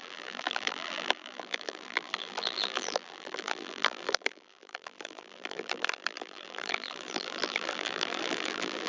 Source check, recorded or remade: remade